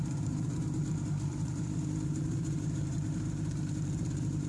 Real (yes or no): no